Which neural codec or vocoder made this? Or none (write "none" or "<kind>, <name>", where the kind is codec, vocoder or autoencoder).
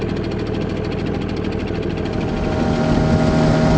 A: none